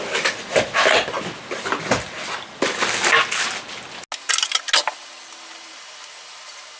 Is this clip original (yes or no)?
yes